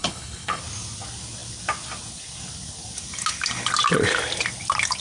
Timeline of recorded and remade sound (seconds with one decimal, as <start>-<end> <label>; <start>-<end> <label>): 0.0-0.6 remade; 0.6-5.0 recorded